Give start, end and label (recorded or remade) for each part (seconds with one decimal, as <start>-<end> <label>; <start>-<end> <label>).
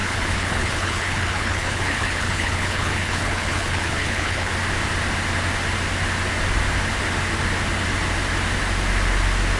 0.0-4.5 remade; 4.5-9.6 recorded